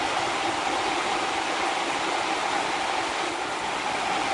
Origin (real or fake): real